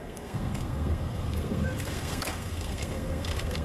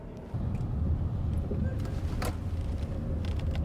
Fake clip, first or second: first